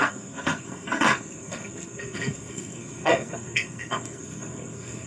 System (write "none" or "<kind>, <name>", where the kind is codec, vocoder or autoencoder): codec, SNAC